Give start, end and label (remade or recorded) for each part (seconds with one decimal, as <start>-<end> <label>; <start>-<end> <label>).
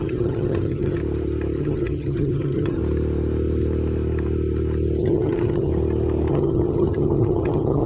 0.0-1.0 remade; 1.0-1.6 recorded; 1.6-2.8 remade; 2.8-5.0 recorded; 5.0-5.7 remade; 5.7-6.3 recorded; 6.3-7.9 remade